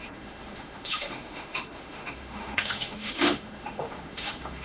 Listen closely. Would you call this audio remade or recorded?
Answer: remade